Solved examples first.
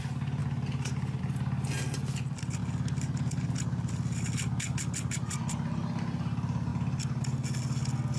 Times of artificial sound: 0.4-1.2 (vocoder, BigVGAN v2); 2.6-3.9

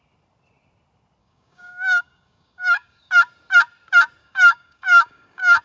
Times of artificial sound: 1.2-3.1 (codec, DAC); 4.2-5.6

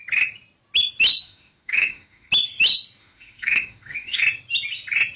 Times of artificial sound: 1.2-2.3 (autoencoder, DAC-VAE); 3.0-4.2

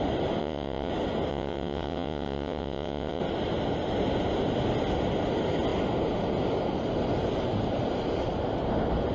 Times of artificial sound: 0.4-0.9 (vocoder, WaveNeXt); 1.3-3.2

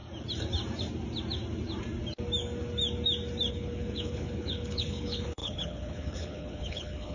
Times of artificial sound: 3.5-7.1 (codec, HILCodec)

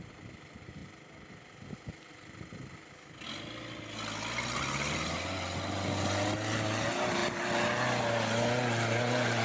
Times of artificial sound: none

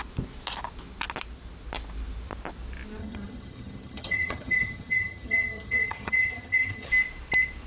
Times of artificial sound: 3.0-6.9 (vocoder, HiFi-GAN)

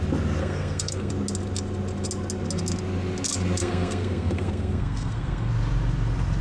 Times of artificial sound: 0.4-1.1 (codec, SNAC); 3.6-5.5